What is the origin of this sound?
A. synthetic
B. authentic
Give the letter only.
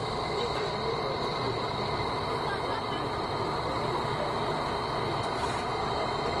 B